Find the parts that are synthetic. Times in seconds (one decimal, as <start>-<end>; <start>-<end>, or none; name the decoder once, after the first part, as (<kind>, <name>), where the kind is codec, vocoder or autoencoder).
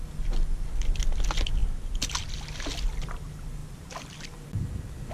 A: 3.6-5.1 (vocoder, BigVGAN v2)